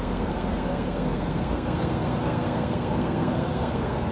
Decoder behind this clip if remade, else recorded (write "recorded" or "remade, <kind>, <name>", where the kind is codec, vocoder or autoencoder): remade, codec, SNAC